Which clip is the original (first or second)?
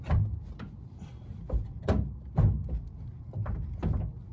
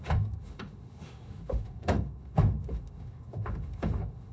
first